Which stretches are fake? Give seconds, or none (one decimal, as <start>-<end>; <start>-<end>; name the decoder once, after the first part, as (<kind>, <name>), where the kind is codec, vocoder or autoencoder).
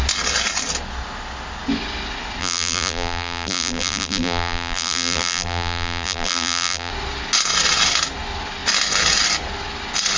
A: 2.4-6.9 (vocoder, BigVGAN v2)